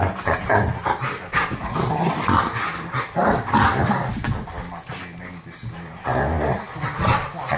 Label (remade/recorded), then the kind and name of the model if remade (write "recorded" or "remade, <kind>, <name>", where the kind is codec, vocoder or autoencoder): recorded